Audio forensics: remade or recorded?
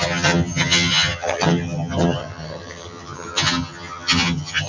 remade